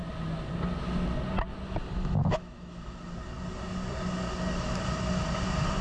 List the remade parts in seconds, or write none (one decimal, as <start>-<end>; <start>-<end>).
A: 2.2-3.0